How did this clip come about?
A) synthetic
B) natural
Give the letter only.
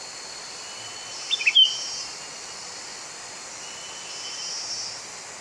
B